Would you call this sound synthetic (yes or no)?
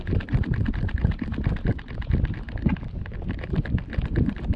no